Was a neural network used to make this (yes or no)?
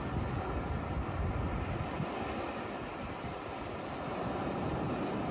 no